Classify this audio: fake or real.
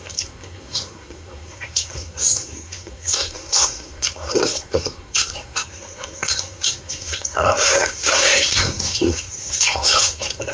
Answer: fake